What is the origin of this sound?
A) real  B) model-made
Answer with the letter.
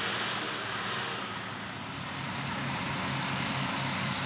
A